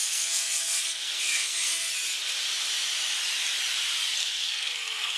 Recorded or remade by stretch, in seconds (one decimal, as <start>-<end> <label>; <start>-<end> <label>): 0.0-1.9 remade; 1.9-4.2 recorded; 4.2-5.2 remade